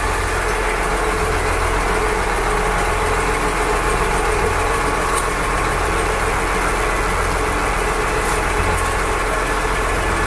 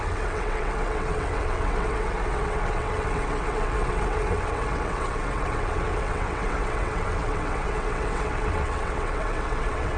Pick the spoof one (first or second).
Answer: second